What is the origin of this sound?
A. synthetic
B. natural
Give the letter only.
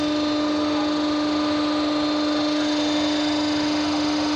B